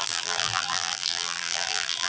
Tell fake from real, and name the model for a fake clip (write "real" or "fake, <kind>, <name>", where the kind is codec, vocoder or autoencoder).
fake, vocoder, BigVGAN v2